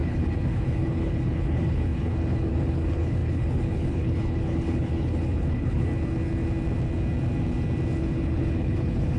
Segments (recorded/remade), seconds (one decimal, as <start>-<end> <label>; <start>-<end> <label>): 0.0-5.9 remade; 5.9-8.0 recorded; 8.0-9.2 remade